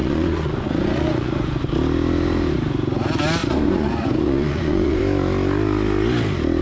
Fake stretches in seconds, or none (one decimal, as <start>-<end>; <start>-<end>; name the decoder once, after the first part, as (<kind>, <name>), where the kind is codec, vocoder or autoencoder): 0.0-1.7 (vocoder, Vocos); 3.4-5.0